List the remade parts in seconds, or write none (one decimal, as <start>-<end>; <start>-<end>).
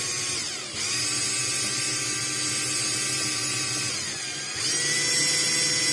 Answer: none